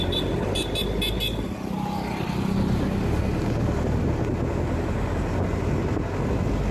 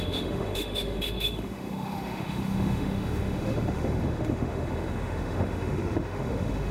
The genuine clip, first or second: first